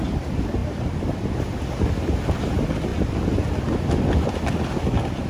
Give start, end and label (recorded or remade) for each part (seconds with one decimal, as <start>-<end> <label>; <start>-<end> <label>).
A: 0.0-5.3 recorded